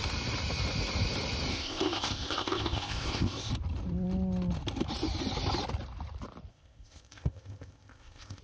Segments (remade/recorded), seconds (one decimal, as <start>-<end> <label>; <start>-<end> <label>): 0.0-1.5 recorded; 1.5-3.5 remade; 3.5-6.5 recorded; 6.5-8.4 remade